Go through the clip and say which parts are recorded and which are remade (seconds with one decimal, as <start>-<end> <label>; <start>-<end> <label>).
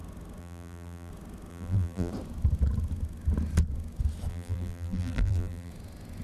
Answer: 0.0-0.4 recorded; 0.4-1.1 remade; 1.1-1.5 recorded; 1.5-2.1 remade; 2.1-4.3 recorded; 4.3-5.7 remade; 5.7-6.2 recorded